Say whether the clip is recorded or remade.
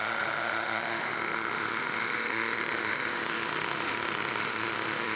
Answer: remade